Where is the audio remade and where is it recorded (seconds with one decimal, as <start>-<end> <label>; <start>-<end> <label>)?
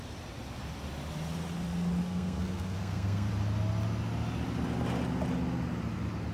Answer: 0.0-2.0 recorded; 2.0-3.3 remade; 3.3-6.3 recorded